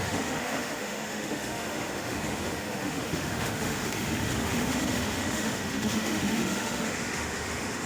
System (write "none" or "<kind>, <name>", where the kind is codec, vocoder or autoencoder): autoencoder, DAC-VAE